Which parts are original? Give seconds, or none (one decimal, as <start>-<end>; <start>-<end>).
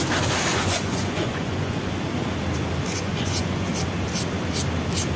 0.0-0.5; 1.8-2.9; 3.7-5.2